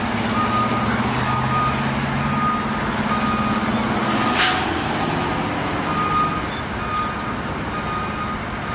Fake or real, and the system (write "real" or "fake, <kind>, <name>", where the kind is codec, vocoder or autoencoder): real